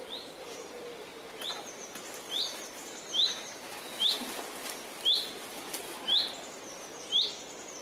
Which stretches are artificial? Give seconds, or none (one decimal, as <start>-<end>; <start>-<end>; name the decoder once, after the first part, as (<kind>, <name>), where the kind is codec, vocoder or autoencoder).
3.3-4.2 (autoencoder, DAC-VAE)